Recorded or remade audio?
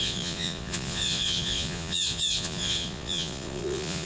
remade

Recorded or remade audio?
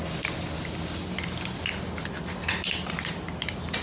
recorded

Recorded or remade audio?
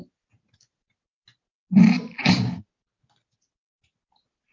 recorded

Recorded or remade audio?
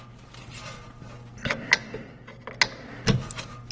recorded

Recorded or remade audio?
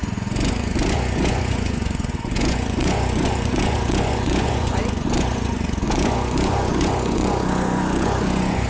remade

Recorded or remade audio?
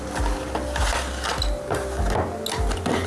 recorded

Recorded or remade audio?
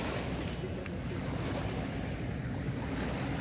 recorded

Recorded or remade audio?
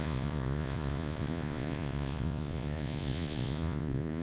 remade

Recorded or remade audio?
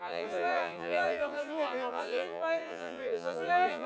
remade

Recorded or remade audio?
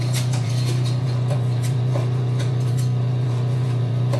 remade